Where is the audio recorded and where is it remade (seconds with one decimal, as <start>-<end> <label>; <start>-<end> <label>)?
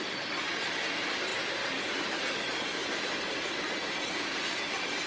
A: 0.0-5.1 recorded